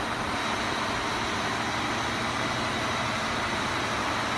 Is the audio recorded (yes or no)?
yes